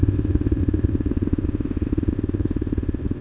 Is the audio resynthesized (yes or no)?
yes